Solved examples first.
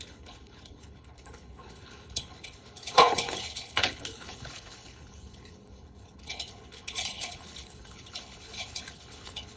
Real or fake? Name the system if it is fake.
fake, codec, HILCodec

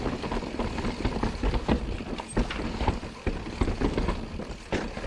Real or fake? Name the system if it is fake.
real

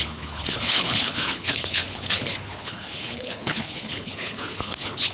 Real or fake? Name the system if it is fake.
fake, codec, HILCodec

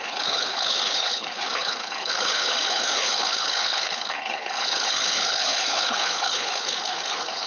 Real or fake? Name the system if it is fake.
fake, codec, HILCodec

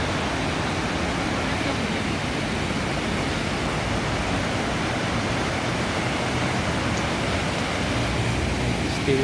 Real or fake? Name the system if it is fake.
real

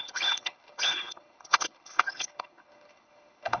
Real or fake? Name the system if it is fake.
fake, codec, HILCodec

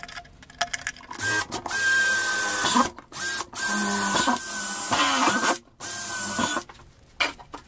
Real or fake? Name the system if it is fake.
real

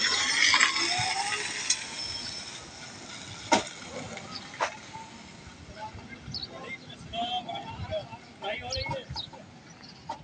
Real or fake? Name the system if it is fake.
real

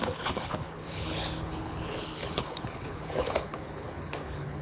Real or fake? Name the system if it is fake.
fake, codec, HILCodec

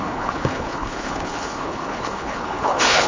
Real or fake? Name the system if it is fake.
fake, codec, HILCodec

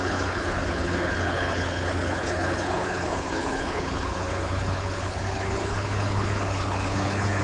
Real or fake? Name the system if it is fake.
fake, codec, HILCodec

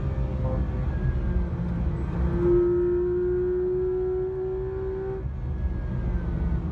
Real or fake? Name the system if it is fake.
real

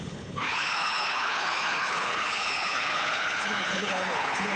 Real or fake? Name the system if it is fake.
fake, codec, HILCodec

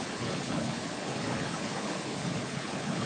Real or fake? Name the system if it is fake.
fake, codec, HILCodec